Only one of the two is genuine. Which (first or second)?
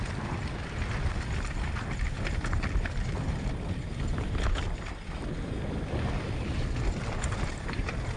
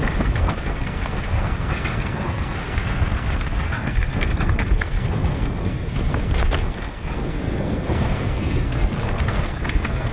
first